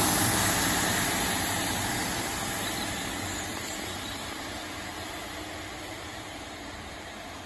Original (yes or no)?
yes